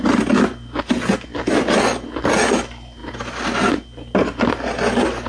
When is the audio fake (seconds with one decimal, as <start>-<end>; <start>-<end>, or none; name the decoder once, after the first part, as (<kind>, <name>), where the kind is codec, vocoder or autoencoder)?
none